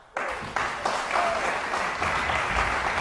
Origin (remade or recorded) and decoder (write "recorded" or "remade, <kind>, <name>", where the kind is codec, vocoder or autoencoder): recorded